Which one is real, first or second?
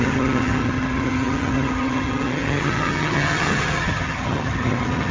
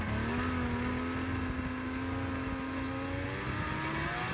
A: second